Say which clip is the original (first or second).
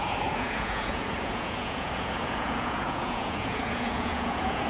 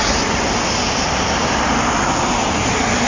second